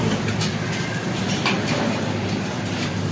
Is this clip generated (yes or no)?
no